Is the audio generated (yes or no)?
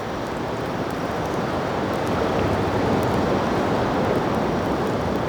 no